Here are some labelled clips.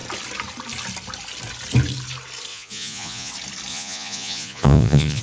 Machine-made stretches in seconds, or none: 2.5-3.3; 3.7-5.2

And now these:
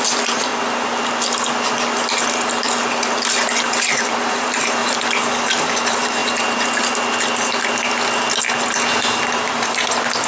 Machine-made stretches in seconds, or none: 0.0-0.5; 4.0-4.8; 5.5-6.2; 9.2-10.3

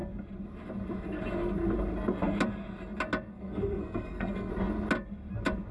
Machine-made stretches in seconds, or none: 3.3-4.5

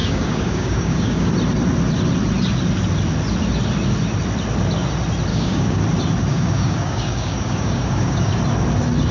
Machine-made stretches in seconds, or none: 0.0-1.3; 5.3-5.8; 6.3-8.4

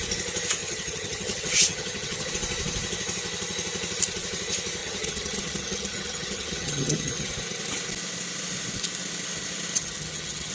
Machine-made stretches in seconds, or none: 0.6-2.3; 4.8-7.3; 9.8-10.5